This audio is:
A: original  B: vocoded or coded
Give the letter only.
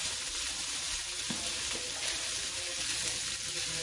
A